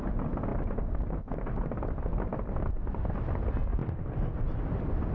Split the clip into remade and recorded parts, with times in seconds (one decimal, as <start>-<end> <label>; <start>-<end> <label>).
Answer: 0.0-5.1 recorded